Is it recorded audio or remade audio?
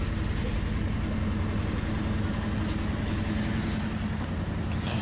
recorded